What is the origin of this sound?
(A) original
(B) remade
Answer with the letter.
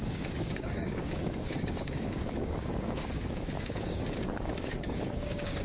B